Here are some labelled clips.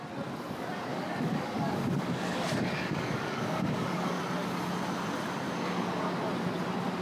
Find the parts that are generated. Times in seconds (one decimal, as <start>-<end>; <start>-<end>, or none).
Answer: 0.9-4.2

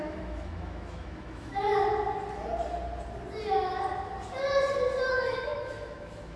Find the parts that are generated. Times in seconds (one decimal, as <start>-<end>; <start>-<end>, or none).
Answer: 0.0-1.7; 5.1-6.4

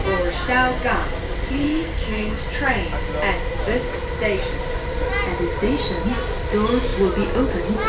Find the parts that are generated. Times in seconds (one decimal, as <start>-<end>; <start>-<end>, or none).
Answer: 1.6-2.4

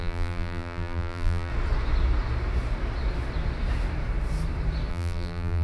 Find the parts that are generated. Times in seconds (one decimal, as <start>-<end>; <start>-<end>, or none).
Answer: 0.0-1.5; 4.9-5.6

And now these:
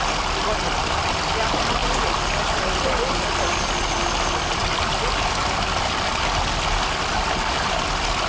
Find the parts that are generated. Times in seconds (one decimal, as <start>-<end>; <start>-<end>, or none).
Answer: none

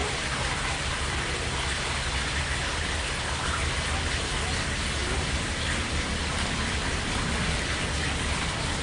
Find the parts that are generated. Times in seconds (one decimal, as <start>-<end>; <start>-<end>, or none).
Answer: 0.0-2.1; 5.0-8.8

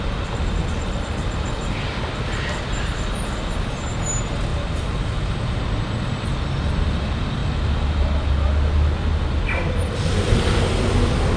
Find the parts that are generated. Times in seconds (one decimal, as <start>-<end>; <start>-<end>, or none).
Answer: 0.0-4.5; 5.3-7.4; 9.4-11.4

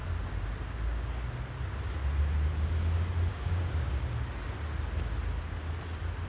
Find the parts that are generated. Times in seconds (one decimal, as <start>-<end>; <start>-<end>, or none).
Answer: 3.3-3.9